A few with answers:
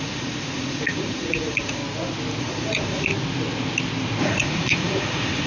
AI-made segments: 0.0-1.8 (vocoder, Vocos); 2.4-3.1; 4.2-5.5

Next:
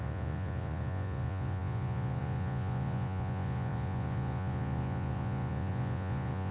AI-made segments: 0.0-6.5 (vocoder, Vocos)

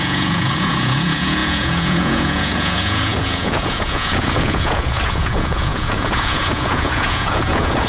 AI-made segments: 0.0-7.9 (vocoder, Vocos)

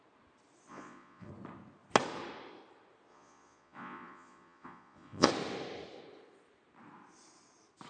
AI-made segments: 0.7-1.3 (vocoder, Vocos); 3.1-5.3